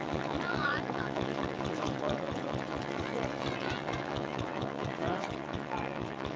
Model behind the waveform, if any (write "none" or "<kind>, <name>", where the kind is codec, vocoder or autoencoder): vocoder, WaveNeXt